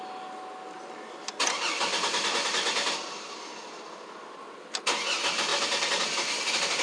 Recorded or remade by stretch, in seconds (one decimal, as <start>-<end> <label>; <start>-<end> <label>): 0.0-6.8 recorded